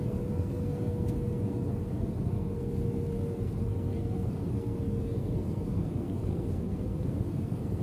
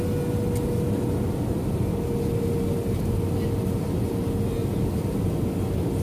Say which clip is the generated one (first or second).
first